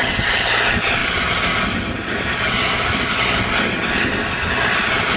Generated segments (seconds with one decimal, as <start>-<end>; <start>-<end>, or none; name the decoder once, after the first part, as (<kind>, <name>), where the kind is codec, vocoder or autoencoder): none